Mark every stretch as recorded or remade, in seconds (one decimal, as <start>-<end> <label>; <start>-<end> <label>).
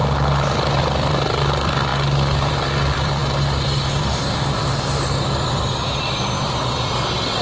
0.0-0.8 recorded; 0.8-1.9 remade; 1.9-2.5 recorded; 2.5-3.2 remade; 3.2-4.0 recorded; 4.0-4.7 remade; 4.7-6.9 recorded; 6.9-7.4 remade